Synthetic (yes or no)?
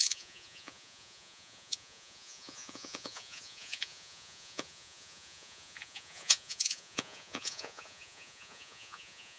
yes